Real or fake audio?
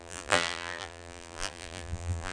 fake